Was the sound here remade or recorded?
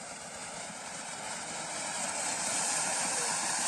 remade